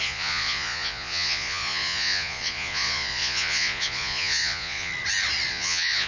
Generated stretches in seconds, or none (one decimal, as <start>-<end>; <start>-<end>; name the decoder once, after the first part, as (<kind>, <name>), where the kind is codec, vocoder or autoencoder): 0.0-4.9 (vocoder, Vocos); 5.5-6.1